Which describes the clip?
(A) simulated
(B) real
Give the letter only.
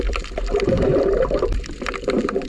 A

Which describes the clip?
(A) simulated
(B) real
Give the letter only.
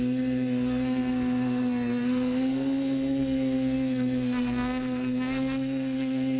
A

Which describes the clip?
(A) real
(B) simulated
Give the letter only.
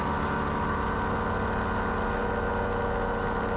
A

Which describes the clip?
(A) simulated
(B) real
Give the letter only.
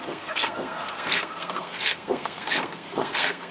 A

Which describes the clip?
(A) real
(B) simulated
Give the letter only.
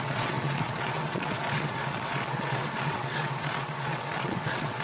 B